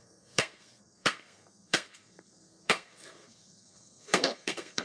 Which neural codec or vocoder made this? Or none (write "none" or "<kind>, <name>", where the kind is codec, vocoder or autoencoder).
codec, SNAC